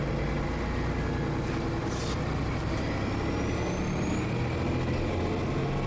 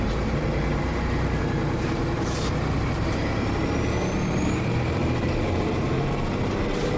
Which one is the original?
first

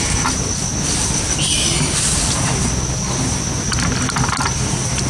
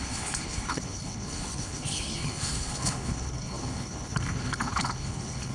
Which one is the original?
first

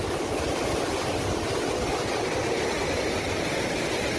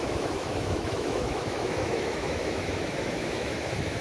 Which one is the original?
first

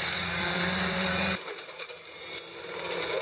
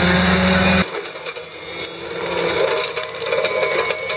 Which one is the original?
second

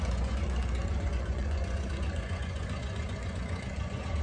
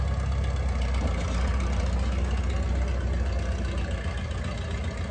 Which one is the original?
second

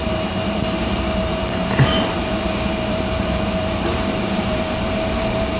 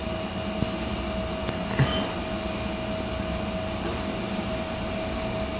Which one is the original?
second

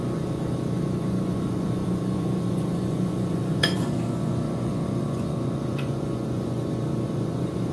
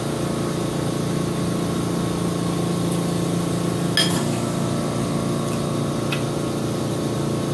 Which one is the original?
second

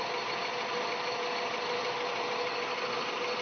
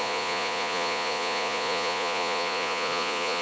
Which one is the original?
first